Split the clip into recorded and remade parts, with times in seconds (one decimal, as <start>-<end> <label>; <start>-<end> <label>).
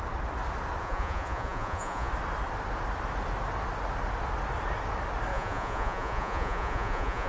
0.0-0.8 recorded; 0.8-2.1 remade; 2.1-5.3 recorded; 5.3-7.3 remade